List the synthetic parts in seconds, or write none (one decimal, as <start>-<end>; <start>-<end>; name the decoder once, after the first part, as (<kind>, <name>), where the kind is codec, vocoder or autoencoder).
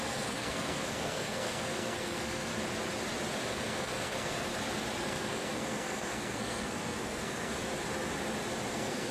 0.0-2.5 (codec, SNAC); 3.5-4.5; 5.0-7.6; 8.7-9.1